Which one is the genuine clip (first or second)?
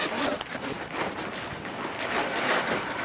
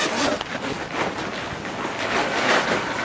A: second